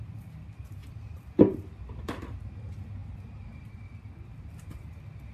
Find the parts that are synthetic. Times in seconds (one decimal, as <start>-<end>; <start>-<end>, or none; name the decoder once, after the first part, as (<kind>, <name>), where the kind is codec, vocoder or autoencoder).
3.0-4.5 (vocoder, BigVGAN v2)